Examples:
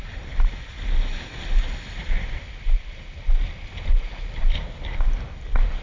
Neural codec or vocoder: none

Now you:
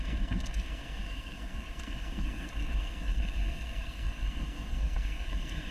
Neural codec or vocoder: codec, SNAC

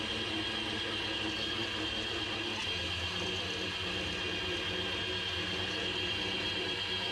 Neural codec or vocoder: none